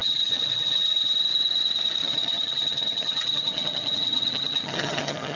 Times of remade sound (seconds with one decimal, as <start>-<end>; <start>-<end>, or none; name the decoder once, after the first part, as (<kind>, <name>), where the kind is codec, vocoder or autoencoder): 0.0-1.2 (vocoder, HiFi-GAN); 2.0-5.4